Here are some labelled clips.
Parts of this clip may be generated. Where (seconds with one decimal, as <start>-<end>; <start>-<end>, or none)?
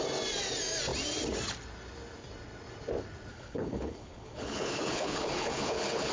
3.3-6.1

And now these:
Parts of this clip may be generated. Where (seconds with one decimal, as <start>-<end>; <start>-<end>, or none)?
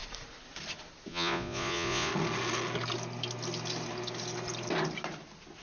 1.1-2.1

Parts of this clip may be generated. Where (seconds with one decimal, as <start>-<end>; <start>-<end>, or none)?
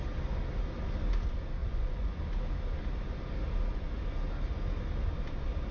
1.6-2.1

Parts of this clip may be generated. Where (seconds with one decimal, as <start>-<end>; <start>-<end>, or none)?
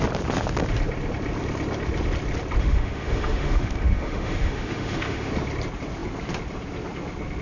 2.6-5.3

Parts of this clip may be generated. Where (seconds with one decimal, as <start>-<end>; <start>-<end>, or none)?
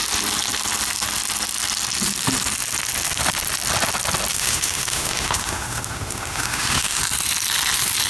4.3-7.0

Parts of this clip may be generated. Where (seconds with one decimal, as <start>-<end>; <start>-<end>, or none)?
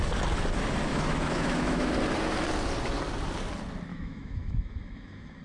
0.9-1.9; 3.9-5.4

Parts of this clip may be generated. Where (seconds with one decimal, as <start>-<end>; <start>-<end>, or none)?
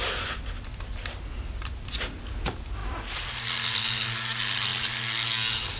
none